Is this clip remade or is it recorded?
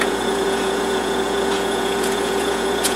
remade